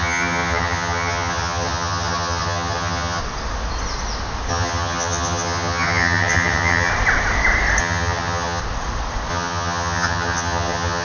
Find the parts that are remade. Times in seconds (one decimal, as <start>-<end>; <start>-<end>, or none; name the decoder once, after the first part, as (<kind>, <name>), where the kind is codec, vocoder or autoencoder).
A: 0.0-3.2 (vocoder, HiFi-GAN); 4.5-6.9; 7.8-8.6; 9.3-11.0